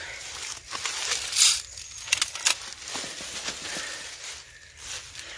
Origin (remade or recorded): recorded